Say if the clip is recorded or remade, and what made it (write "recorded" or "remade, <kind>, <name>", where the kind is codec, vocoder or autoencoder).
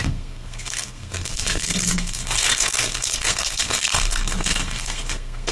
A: remade, codec, SNAC